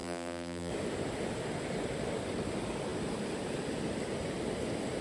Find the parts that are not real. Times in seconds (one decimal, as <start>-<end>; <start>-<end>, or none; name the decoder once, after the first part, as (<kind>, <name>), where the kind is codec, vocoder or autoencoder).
0.0-0.7 (vocoder, BigVGAN v2)